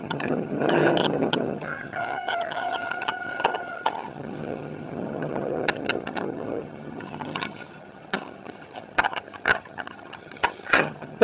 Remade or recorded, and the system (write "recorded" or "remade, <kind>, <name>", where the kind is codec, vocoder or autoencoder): remade, vocoder, HiFi-GAN